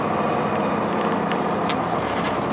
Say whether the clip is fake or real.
real